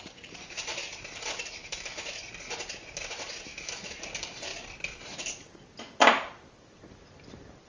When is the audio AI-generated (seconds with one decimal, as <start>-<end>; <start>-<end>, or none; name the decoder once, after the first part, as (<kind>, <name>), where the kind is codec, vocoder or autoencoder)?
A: 1.6-2.2 (autoencoder, DAC-VAE); 3.5-4.0